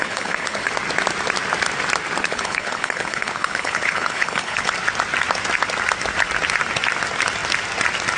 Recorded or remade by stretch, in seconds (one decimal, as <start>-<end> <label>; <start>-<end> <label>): 0.0-0.7 remade; 0.7-2.2 recorded; 2.2-4.7 remade; 4.7-8.2 recorded